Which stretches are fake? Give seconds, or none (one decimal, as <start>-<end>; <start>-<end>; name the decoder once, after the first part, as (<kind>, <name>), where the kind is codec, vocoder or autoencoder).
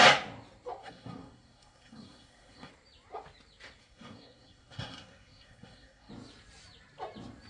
0.8-2.7 (codec, SNAC); 3.8-6.1